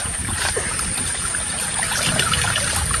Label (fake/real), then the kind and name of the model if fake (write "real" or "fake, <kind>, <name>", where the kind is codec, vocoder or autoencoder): fake, vocoder, BigVGAN v2